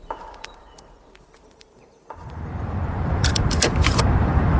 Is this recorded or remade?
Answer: remade